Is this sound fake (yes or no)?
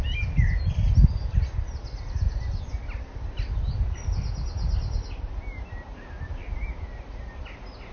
no